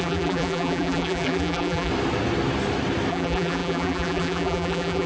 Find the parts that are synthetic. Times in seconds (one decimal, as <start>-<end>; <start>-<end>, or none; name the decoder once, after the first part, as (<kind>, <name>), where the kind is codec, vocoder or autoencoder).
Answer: 0.0-1.9 (vocoder, BigVGAN v2); 3.1-5.1